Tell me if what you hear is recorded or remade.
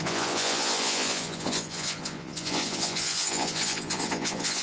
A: remade